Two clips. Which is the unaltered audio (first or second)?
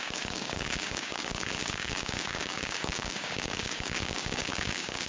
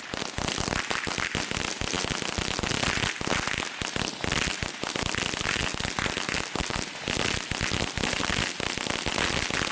second